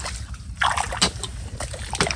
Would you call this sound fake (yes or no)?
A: no